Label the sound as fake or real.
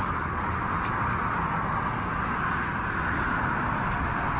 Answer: real